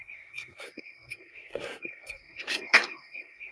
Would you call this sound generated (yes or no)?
yes